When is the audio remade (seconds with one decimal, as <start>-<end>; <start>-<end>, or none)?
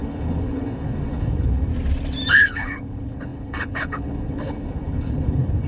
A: 0.0-1.7; 2.3-5.7